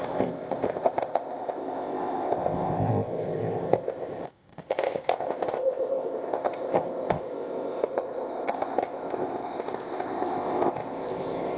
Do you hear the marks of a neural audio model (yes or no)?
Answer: yes